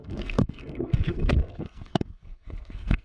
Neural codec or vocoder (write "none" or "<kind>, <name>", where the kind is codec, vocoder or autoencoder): codec, SNAC